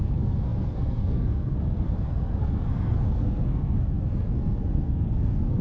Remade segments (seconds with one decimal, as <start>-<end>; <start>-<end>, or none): 0.0-5.6